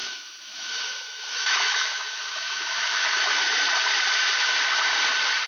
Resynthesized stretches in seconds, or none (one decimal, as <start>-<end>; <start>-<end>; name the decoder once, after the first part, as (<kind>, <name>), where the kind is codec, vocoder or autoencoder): 0.0-3.3 (autoencoder, DAC-VAE)

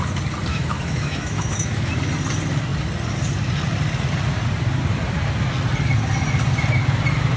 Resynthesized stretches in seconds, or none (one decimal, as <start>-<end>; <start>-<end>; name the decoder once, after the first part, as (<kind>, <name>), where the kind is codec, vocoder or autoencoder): 0.5-1.9 (autoencoder, DAC-VAE)

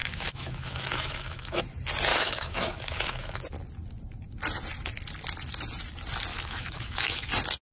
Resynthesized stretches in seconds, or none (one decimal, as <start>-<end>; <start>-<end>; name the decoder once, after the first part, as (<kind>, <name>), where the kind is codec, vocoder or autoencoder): 0.0-1.6 (autoencoder, DAC-VAE); 2.1-3.4; 6.3-7.3

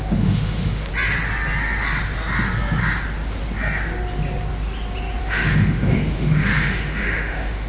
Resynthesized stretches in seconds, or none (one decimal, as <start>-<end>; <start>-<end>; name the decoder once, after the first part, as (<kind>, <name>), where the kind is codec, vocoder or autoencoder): 0.0-0.9 (autoencoder, DAC-VAE); 5.2-7.7

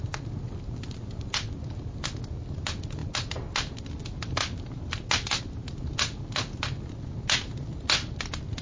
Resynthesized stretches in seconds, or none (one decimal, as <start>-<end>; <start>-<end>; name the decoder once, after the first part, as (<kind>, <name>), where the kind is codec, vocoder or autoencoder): none

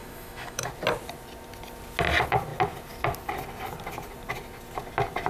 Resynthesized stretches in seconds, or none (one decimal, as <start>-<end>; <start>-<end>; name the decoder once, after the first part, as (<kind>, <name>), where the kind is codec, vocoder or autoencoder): 0.0-0.7 (autoencoder, DAC-VAE)